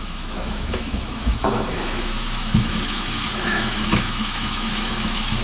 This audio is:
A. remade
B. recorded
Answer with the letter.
A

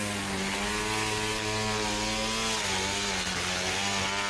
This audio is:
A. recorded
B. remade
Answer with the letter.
A